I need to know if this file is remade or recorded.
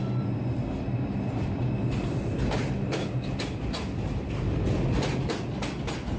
recorded